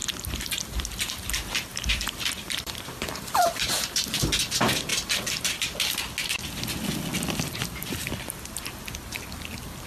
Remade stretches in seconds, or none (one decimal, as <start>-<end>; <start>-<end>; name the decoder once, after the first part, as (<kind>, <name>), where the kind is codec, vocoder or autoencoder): 0.0-0.6 (vocoder, BigVGAN v2); 1.7-4.0

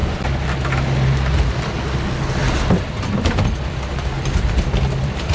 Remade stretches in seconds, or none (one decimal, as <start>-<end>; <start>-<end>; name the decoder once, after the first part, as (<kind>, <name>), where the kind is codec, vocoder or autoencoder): 0.0-0.7 (vocoder, BigVGAN v2); 2.4-5.3

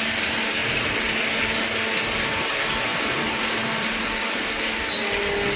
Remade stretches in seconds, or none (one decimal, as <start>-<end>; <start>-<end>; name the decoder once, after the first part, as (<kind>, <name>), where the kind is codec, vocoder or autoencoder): 2.9-4.2 (vocoder, BigVGAN v2)